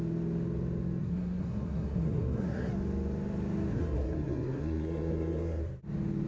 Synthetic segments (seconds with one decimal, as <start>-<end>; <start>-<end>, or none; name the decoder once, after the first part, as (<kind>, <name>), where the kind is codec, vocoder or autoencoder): 1.0-2.7 (codec, SNAC); 3.7-5.6